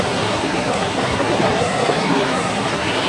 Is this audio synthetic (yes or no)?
yes